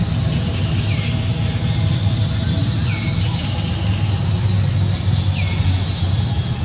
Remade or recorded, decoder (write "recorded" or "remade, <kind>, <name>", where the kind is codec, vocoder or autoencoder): recorded